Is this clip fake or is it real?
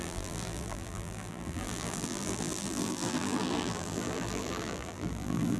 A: fake